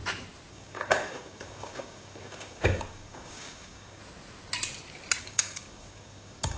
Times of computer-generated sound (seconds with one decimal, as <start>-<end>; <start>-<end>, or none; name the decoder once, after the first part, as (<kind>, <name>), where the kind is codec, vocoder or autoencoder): 0.5-4.0 (codec, DAC); 5.2-6.6